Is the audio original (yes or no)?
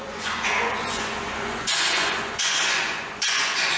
no